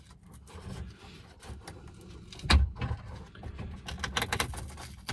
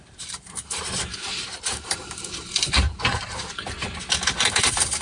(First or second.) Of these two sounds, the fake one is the second